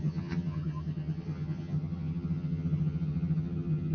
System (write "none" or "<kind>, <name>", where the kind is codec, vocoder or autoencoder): vocoder, HiFi-GAN